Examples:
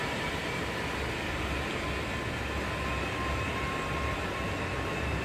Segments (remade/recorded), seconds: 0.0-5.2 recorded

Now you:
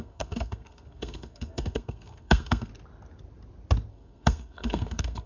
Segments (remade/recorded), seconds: 0.0-2.7 remade; 2.7-3.9 recorded; 3.9-5.3 remade

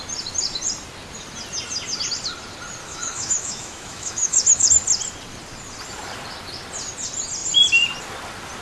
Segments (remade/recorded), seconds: 0.0-2.8 recorded; 2.8-4.7 remade; 4.7-8.6 recorded

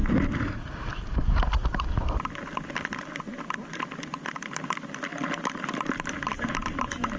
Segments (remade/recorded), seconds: 0.0-1.6 recorded; 1.6-2.4 remade; 2.4-5.1 recorded; 5.1-7.2 remade

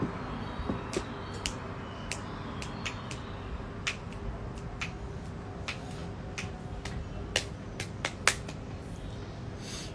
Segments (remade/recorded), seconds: 0.0-9.9 recorded

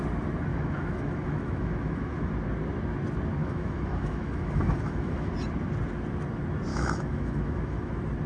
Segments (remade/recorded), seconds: 0.0-0.5 recorded; 0.5-2.3 remade; 2.3-3.4 recorded; 3.4-5.3 remade; 5.3-6.7 recorded; 6.7-7.9 remade; 7.9-8.3 recorded

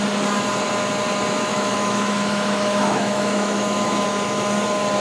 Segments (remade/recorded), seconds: 0.0-1.5 recorded; 1.5-4.5 remade; 4.5-5.0 recorded